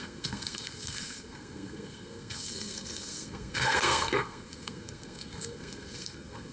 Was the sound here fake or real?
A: fake